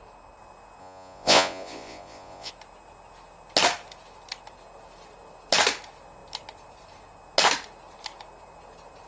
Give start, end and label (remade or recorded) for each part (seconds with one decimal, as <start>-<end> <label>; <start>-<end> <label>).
0.0-0.8 recorded; 0.8-2.5 remade; 2.5-9.1 recorded